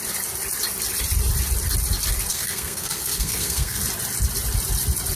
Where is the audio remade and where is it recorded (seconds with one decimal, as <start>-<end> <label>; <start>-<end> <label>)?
0.0-2.3 recorded; 2.3-3.8 remade; 3.8-5.2 recorded